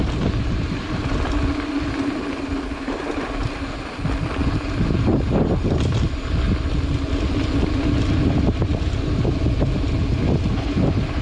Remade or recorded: recorded